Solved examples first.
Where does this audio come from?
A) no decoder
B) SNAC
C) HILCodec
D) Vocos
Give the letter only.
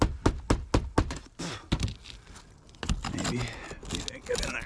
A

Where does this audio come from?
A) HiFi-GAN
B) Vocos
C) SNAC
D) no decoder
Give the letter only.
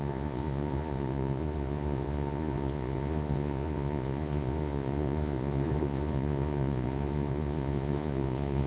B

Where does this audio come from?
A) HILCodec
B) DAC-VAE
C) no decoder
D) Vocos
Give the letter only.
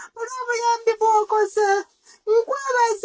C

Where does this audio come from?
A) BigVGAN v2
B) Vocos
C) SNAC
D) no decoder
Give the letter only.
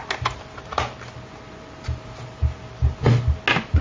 D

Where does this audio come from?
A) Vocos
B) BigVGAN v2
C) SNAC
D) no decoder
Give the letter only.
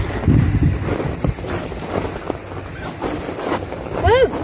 D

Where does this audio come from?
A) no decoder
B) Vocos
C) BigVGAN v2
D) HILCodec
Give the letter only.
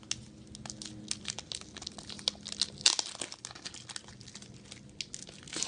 A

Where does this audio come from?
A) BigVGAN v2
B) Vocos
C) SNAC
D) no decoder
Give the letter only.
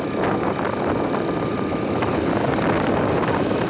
D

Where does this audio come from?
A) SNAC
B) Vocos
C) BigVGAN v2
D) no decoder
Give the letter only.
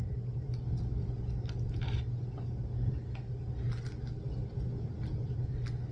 D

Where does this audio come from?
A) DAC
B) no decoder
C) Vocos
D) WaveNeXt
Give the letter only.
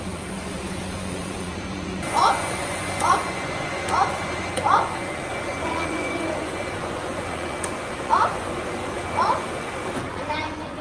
C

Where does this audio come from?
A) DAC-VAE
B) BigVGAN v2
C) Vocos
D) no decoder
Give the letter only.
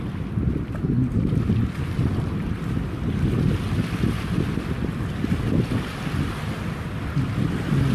D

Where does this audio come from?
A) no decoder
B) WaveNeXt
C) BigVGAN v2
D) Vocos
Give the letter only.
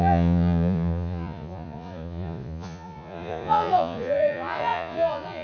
D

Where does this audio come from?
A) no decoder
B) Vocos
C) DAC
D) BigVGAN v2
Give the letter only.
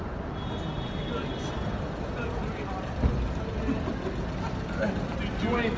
A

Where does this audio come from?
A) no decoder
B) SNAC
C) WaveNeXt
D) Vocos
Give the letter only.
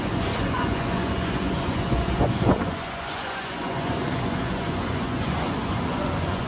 D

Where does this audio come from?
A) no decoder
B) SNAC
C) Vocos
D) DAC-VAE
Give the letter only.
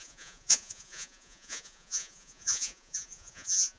C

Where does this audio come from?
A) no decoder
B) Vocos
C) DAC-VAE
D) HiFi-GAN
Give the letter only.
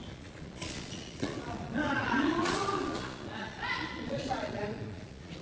B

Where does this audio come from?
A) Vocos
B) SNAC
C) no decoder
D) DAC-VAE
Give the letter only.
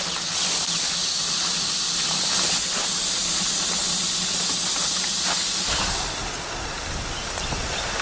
C